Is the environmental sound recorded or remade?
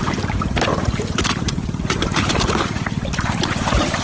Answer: remade